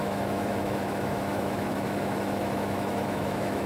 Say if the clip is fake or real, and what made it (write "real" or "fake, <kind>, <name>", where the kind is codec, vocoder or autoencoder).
fake, autoencoder, DAC-VAE